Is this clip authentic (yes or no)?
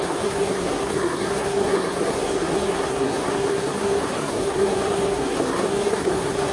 no